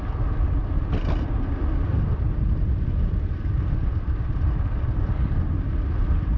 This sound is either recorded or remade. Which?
remade